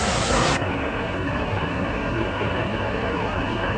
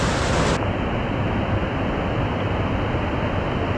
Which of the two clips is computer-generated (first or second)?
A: first